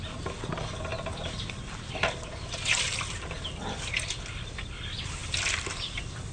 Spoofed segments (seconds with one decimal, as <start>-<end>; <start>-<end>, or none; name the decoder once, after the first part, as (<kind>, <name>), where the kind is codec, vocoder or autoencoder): 0.0-6.3 (vocoder, BigVGAN v2)